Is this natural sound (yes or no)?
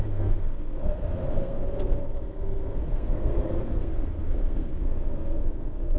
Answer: no